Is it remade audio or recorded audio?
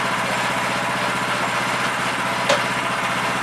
recorded